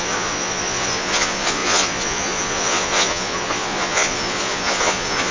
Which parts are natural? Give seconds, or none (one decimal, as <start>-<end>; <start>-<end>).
none